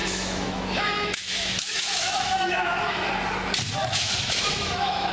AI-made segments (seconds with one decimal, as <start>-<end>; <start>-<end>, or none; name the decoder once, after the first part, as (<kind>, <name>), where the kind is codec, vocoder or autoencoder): 0.0-3.1 (autoencoder, DAC-VAE); 3.8-5.1